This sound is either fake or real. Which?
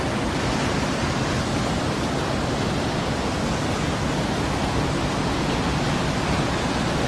real